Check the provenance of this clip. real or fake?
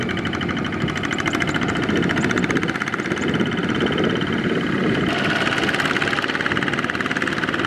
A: real